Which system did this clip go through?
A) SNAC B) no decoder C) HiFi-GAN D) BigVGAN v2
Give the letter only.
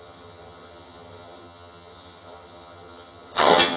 C